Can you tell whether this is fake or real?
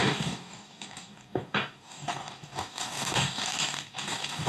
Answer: fake